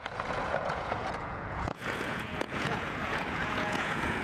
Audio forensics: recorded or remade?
remade